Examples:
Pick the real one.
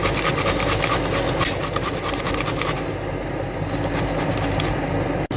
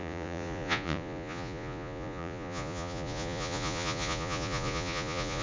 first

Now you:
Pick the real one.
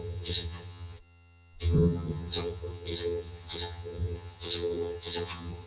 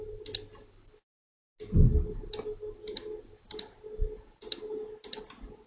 second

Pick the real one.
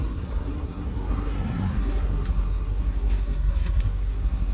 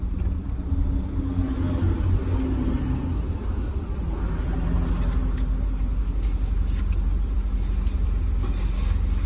second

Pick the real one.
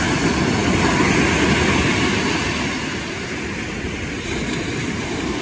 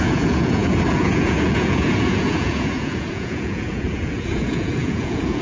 first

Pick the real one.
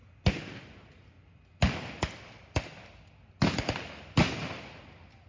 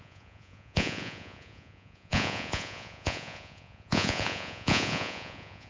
first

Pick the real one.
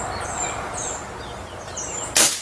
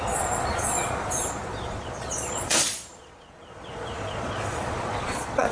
first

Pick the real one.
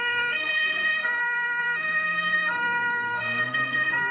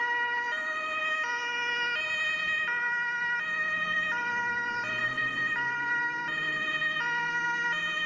second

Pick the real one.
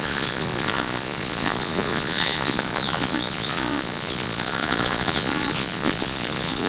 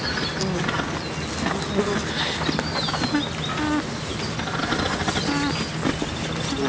second